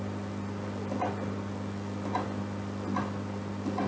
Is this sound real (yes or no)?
yes